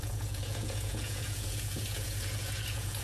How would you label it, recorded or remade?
remade